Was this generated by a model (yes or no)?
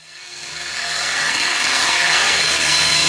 yes